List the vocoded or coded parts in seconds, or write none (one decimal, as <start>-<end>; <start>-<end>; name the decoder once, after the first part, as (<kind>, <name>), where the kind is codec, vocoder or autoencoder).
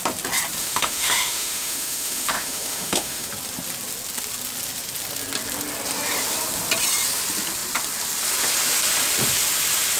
0.6-3.3 (autoencoder, DAC-VAE)